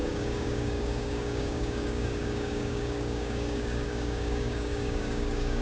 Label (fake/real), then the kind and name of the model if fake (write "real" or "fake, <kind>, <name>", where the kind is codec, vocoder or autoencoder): fake, codec, DAC